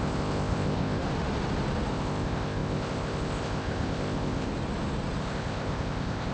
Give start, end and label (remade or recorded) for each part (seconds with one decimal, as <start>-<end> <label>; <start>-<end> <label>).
0.0-1.0 remade; 1.0-1.9 recorded; 1.9-4.5 remade; 4.5-5.2 recorded; 5.2-6.3 remade